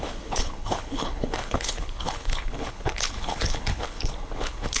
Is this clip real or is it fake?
fake